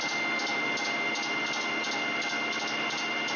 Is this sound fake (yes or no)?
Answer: no